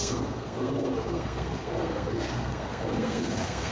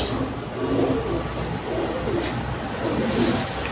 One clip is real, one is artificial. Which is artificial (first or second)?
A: first